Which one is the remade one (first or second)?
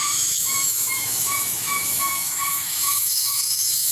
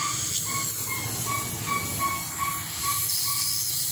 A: first